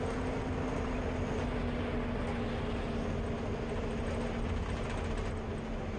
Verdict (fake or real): real